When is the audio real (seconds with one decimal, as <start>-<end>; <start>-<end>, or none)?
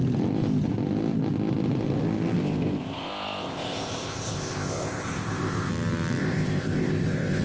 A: 0.0-2.4; 5.7-6.2